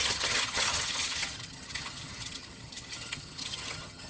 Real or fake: fake